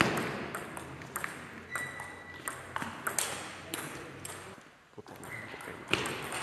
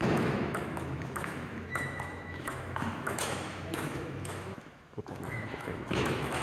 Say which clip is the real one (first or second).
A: first